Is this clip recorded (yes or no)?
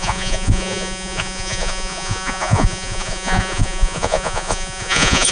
no